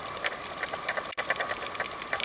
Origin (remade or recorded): remade